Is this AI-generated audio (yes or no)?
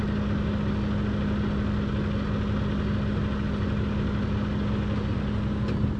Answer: no